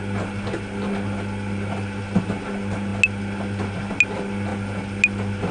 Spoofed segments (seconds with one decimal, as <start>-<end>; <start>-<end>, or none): none